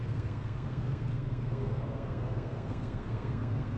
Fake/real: fake